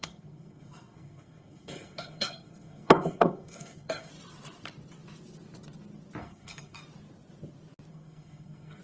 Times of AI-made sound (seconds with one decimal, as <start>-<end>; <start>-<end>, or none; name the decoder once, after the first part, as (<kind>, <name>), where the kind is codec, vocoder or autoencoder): 0.0-4.1 (codec, SNAC); 6.2-6.8; 7.9-8.8